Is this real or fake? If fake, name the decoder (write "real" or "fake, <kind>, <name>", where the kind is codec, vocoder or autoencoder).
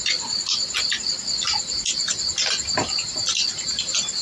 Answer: real